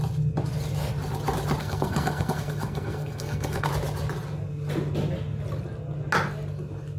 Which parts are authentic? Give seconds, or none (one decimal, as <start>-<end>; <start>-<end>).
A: 0.0-1.6; 3.7-7.0